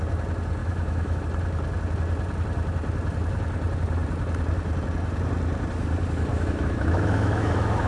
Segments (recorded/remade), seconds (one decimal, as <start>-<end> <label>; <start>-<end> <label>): 0.0-0.6 recorded; 0.6-1.2 remade; 1.2-6.3 recorded; 6.3-7.9 remade